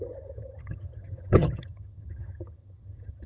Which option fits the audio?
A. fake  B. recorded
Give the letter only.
A